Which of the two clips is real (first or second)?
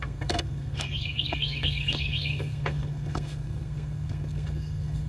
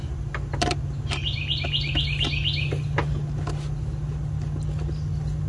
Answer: second